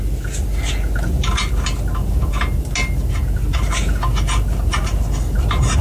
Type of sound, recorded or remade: recorded